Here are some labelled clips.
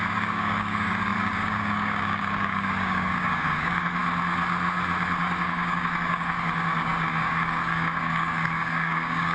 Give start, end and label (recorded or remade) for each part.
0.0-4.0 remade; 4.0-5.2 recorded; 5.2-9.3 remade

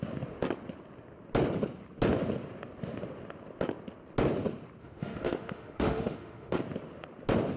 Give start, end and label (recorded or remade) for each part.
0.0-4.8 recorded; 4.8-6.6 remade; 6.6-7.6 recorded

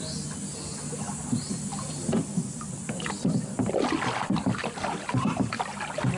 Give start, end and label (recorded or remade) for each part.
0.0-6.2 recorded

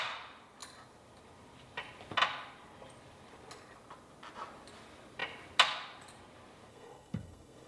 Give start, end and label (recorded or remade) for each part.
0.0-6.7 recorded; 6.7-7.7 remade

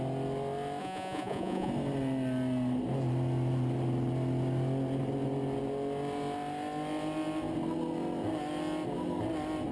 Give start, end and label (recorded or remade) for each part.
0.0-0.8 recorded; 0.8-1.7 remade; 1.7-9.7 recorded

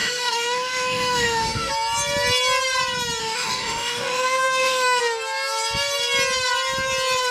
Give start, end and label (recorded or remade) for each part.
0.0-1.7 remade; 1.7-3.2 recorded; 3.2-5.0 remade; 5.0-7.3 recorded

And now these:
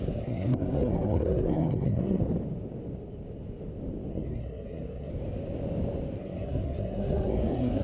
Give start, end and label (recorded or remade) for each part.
0.0-2.2 remade; 2.2-4.1 recorded; 4.1-5.1 remade; 5.1-6.2 recorded; 6.2-7.8 remade